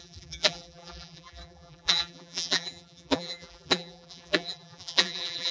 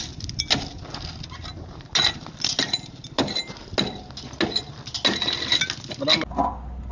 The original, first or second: second